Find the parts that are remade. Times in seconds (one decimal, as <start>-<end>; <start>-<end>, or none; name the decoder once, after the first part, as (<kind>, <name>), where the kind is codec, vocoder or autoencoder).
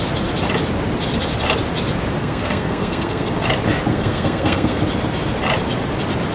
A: 2.2-3.5 (codec, SNAC); 3.9-4.8